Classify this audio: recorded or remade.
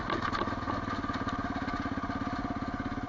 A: recorded